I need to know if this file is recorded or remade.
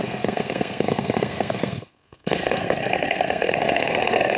remade